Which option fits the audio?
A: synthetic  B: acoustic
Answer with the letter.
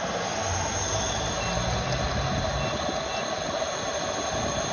B